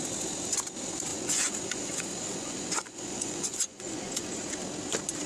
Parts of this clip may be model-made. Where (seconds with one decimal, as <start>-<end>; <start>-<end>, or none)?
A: 1.1-4.3